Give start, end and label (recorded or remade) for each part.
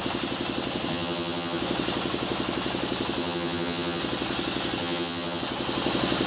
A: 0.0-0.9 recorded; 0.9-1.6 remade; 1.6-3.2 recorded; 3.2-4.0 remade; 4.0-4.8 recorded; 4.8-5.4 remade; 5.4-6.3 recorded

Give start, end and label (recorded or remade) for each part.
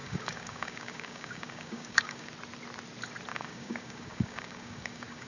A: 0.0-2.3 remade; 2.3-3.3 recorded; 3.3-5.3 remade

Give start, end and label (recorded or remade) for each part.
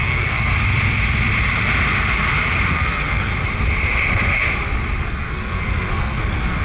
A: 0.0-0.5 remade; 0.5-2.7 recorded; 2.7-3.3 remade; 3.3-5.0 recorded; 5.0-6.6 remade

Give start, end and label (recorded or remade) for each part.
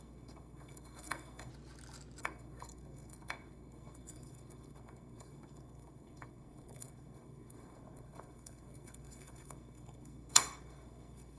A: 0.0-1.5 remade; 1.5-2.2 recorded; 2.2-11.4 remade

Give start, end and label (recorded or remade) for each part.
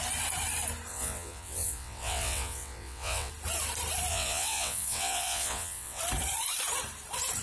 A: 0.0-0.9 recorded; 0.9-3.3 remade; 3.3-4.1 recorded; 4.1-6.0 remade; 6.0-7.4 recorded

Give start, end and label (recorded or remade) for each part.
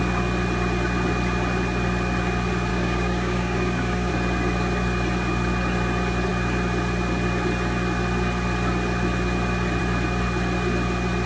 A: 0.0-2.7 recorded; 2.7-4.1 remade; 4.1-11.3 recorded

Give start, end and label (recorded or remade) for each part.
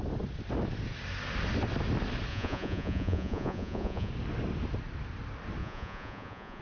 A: 0.0-2.3 recorded; 2.3-4.1 remade; 4.1-5.6 recorded; 5.6-6.6 remade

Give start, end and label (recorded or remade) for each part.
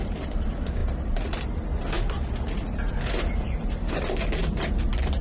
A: 0.0-5.2 remade